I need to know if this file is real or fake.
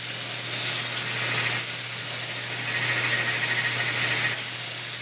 real